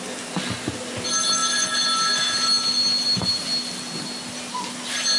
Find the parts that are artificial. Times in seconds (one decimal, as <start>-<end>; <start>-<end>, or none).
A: none